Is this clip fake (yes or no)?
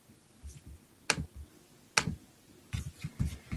no